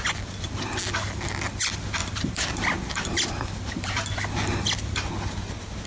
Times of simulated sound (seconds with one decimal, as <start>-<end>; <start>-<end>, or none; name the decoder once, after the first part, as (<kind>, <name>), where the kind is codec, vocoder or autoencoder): 2.0-5.1 (vocoder, BigVGAN v2)